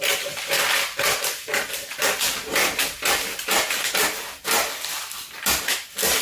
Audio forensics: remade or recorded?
remade